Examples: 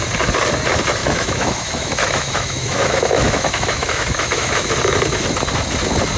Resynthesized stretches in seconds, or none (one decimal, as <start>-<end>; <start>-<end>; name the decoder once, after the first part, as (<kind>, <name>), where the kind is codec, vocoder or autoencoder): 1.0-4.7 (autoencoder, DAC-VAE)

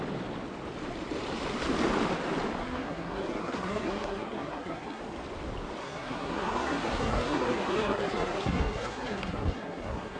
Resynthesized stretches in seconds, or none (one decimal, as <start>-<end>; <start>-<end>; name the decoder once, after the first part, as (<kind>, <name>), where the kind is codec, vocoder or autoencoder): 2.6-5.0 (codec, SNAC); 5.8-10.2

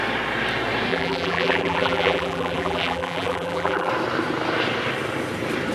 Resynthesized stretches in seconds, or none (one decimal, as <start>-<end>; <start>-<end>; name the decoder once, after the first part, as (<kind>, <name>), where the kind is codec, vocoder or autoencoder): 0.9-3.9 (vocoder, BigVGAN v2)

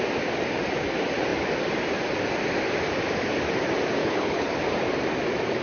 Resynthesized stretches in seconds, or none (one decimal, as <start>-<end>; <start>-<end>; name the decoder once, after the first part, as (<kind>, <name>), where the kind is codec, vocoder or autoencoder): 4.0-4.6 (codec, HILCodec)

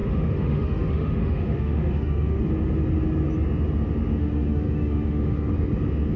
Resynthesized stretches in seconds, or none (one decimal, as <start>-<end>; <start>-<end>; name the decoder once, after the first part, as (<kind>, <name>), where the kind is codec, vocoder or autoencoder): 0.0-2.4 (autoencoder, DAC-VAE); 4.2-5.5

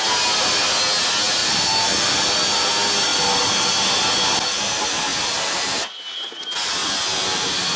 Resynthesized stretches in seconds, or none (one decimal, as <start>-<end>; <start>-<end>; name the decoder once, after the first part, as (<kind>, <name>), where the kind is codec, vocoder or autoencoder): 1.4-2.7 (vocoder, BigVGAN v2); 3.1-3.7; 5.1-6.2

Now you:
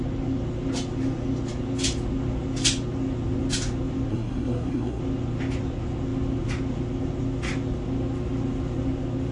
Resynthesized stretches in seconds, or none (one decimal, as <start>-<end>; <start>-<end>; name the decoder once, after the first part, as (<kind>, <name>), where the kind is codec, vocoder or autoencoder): 4.1-5.0 (codec, SNAC)